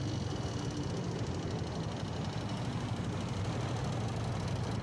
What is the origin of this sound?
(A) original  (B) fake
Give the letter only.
A